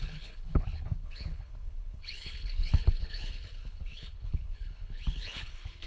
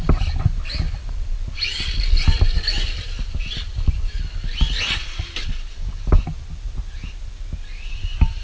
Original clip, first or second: second